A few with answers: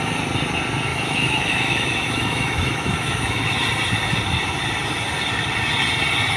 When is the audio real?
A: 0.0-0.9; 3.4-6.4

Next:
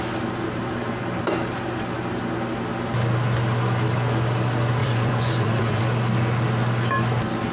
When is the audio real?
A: 0.0-4.8; 5.8-7.5

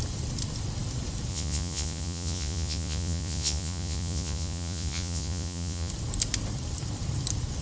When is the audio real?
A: 0.0-1.3; 5.9-7.6

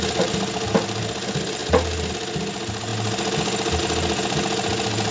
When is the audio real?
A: 0.0-5.1